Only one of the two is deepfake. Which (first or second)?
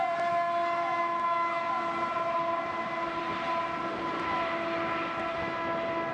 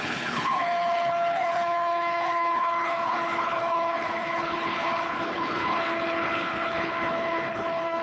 second